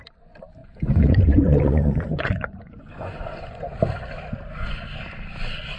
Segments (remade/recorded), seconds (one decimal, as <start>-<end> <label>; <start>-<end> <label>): 0.0-0.6 recorded; 0.6-3.8 remade; 3.8-5.8 recorded